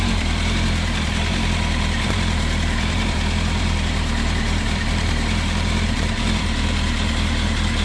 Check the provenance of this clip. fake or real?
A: fake